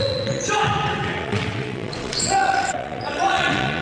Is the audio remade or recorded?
remade